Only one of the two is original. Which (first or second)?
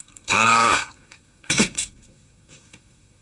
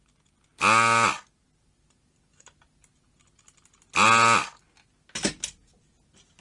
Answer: second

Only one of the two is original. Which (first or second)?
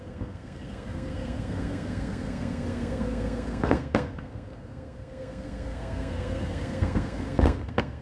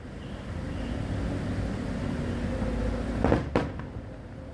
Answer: second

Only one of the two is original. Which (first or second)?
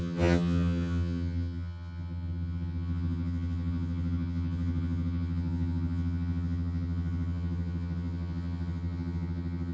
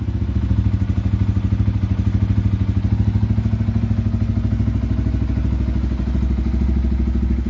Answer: second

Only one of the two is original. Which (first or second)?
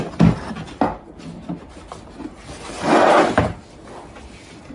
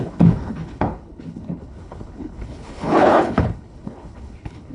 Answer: first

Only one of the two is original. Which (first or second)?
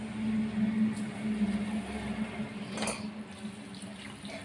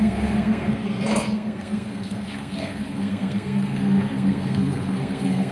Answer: first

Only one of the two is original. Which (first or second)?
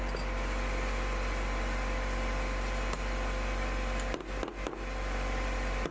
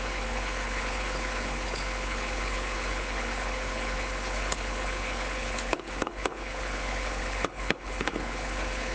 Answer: first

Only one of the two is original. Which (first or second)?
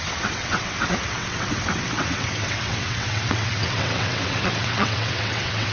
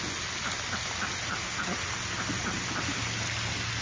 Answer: second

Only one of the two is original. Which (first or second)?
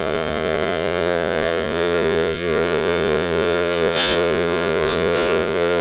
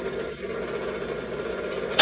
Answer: second